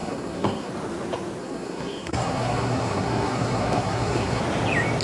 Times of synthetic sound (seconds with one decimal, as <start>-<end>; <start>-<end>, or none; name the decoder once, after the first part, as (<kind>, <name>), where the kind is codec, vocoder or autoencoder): 0.0-0.7 (codec, SNAC); 1.4-4.4